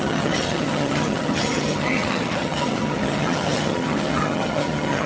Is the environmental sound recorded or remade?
remade